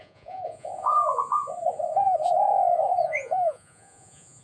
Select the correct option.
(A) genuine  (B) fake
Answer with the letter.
B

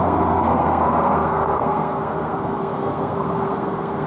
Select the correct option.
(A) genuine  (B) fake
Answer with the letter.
B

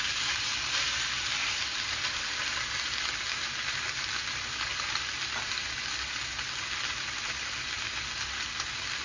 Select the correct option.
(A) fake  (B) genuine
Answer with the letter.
B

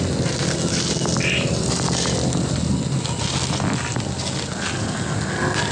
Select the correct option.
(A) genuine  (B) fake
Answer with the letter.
A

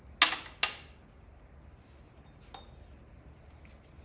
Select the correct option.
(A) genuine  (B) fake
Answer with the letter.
A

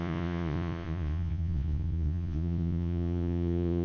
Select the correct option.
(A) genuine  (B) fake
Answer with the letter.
B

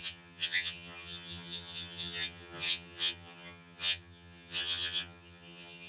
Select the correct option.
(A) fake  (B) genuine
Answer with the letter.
A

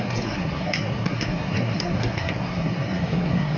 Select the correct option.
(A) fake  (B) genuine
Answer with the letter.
A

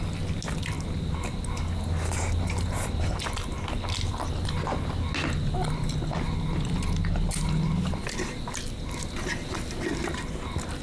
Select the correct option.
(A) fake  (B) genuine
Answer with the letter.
B